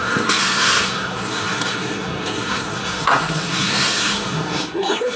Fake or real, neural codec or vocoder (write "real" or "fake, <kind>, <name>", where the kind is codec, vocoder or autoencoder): fake, codec, SNAC